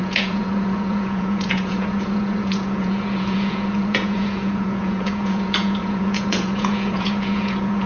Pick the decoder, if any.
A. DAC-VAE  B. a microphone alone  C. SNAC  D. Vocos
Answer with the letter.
D